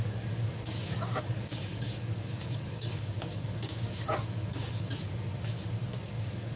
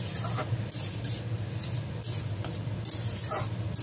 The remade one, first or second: first